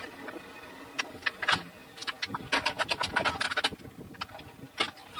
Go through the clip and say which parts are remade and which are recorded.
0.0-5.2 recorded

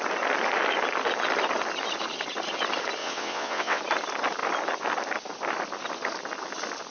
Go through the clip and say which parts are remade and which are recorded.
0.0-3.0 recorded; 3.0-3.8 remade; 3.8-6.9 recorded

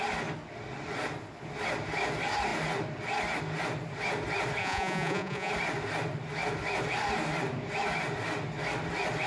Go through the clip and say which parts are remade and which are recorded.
0.0-4.6 recorded; 4.6-5.5 remade; 5.5-9.3 recorded